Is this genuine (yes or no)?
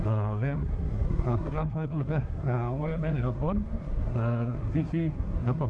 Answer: no